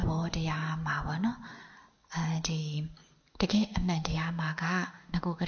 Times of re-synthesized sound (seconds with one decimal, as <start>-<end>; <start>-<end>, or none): 3.3-5.5